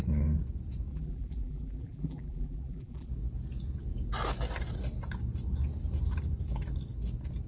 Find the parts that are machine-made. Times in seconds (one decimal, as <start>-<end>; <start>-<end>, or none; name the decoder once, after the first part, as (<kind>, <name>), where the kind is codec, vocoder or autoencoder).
0.9-3.1 (vocoder, BigVGAN v2)